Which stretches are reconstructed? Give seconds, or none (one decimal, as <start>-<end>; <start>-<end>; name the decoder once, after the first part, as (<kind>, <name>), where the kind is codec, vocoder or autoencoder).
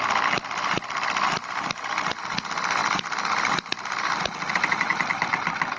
none